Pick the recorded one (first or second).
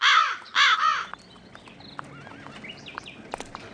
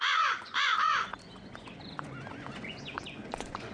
first